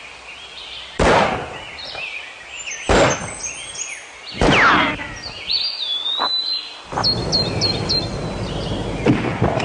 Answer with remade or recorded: recorded